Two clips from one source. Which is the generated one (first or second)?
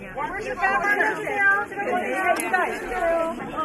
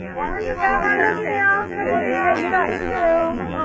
second